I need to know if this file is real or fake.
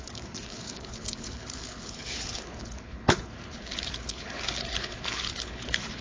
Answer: fake